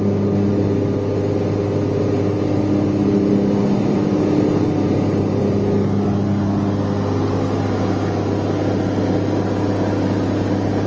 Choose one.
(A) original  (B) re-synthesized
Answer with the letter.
A